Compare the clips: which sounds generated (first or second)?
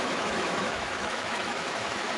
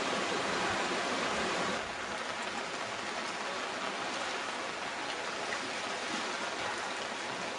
first